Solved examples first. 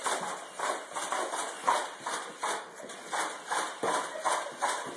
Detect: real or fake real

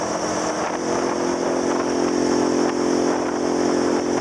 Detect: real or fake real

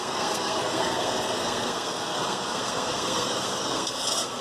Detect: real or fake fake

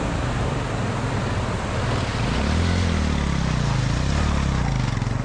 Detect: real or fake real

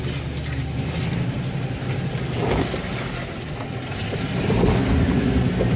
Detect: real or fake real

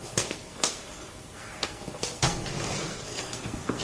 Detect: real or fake fake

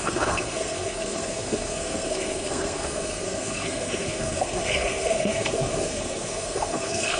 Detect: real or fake fake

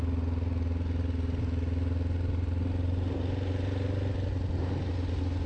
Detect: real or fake real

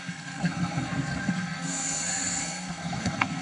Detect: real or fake fake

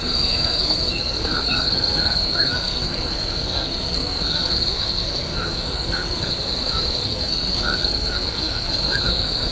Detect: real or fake fake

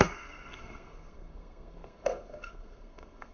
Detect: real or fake fake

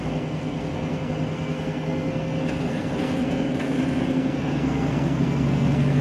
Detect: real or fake fake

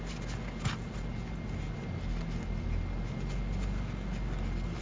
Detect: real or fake real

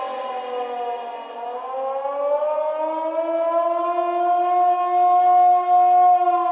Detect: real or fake real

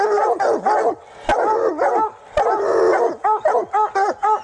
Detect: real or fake real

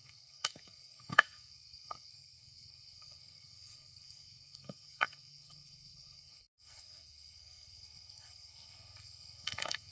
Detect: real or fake fake